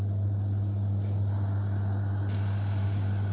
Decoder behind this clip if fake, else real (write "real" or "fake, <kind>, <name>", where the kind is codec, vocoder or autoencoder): real